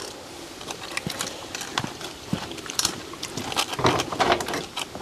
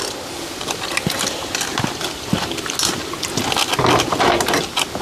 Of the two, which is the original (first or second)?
second